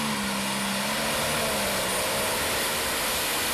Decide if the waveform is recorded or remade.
recorded